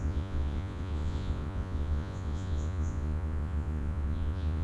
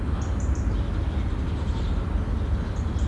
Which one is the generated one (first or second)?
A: first